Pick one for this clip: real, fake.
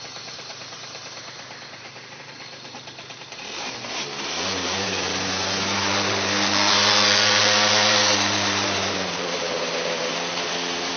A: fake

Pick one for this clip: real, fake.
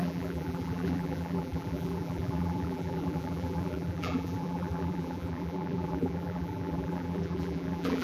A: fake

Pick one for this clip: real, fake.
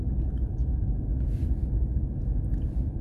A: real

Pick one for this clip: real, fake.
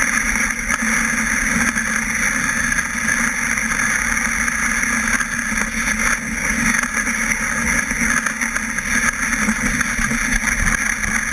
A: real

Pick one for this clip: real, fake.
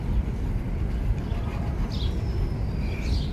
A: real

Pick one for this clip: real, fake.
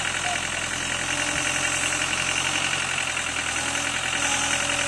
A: real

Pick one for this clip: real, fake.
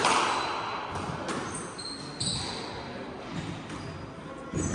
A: real